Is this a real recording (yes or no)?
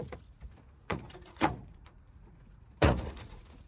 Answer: no